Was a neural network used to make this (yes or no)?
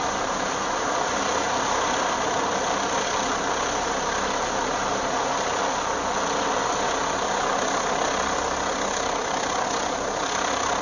no